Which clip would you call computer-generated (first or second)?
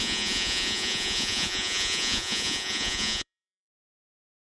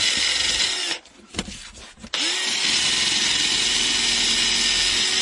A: first